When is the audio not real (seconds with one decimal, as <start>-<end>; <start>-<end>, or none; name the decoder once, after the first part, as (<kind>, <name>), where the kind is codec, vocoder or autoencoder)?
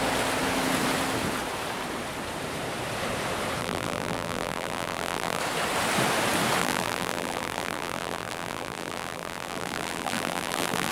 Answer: 3.6-5.4 (vocoder, BigVGAN v2); 6.6-10.9